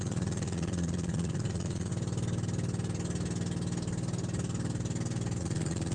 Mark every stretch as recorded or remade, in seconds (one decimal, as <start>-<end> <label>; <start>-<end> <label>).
0.0-1.9 remade; 1.9-5.4 recorded; 5.4-5.9 remade